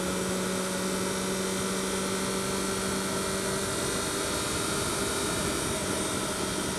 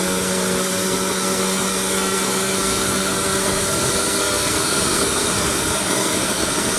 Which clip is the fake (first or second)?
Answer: second